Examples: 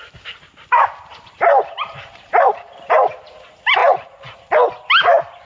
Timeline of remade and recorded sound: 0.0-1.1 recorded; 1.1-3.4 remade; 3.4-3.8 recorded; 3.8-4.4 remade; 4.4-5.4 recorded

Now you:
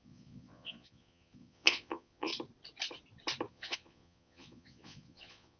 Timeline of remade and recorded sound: 0.0-2.3 remade; 2.3-3.5 recorded; 3.5-5.6 remade

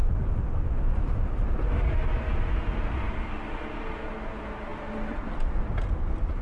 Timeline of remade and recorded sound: 0.0-6.4 recorded

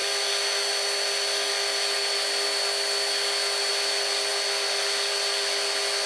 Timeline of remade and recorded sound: 0.0-6.1 recorded

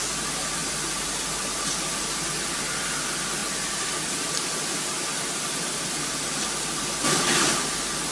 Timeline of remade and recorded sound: 0.0-8.1 recorded

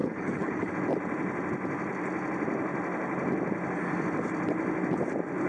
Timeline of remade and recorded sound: 0.0-0.7 remade; 0.7-5.5 recorded